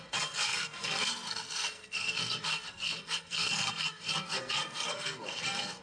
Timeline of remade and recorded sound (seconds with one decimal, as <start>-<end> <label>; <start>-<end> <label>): 0.0-5.8 remade